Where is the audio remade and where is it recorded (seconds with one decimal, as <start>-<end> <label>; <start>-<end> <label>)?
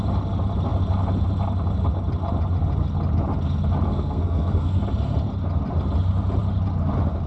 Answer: 0.0-3.9 recorded; 3.9-4.8 remade; 4.8-7.3 recorded